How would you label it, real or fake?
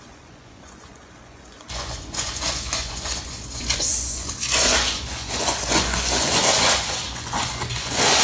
fake